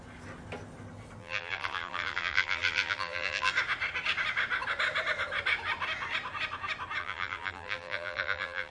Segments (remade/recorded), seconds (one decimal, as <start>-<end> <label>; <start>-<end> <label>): 0.0-1.2 recorded; 1.2-3.5 remade; 3.5-7.0 recorded; 7.0-8.7 remade